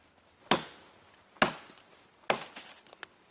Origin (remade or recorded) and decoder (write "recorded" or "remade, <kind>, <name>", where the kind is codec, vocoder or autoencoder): recorded